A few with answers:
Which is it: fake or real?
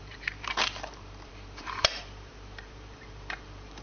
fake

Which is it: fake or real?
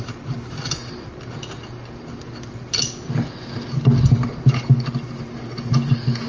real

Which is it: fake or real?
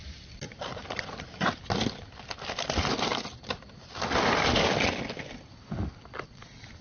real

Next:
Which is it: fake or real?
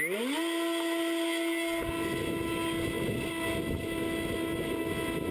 real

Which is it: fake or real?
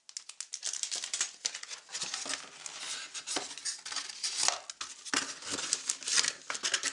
real